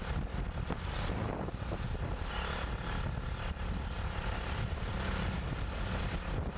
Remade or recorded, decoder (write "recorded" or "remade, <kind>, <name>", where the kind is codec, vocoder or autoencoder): recorded